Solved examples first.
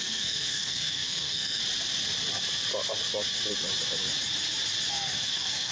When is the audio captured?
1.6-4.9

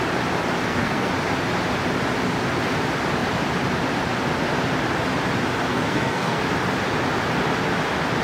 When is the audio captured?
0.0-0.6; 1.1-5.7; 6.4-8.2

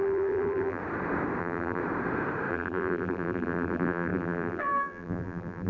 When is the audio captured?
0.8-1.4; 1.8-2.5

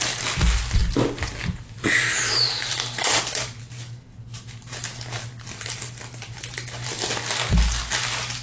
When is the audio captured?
0.0-8.4